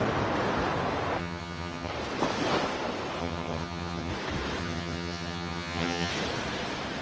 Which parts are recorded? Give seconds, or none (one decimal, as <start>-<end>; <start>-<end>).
0.0-1.2; 1.9-3.2; 4.1-4.6; 6.1-7.0